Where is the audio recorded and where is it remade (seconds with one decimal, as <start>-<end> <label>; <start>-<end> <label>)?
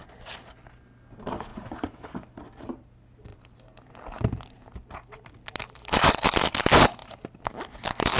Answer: 0.0-1.5 recorded; 1.5-2.1 remade; 2.1-8.2 recorded